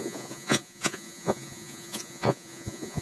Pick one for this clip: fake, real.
fake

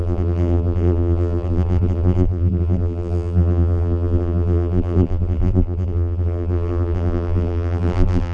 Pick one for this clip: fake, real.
fake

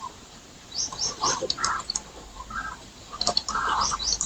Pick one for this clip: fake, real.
fake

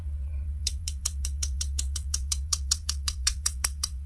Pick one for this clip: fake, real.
fake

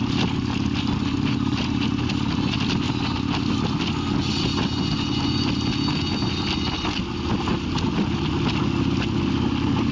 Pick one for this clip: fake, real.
real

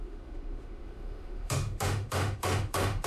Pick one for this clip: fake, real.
fake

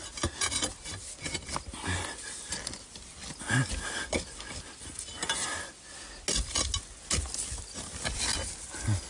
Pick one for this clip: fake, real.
real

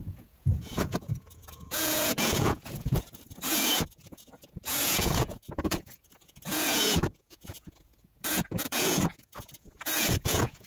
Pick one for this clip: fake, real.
fake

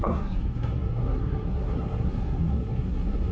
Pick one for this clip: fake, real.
fake